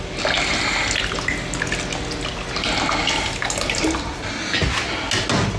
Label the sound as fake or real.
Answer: real